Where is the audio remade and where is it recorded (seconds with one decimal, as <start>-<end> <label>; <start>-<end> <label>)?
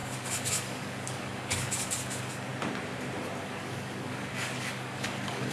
0.0-2.5 remade; 2.5-3.4 recorded; 3.4-5.5 remade